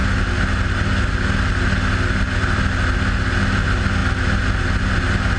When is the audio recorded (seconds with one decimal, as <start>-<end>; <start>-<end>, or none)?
0.0-5.4